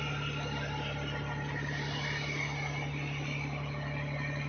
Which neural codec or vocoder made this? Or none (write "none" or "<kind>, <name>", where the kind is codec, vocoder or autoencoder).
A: none